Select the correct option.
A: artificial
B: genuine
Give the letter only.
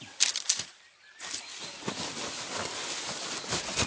B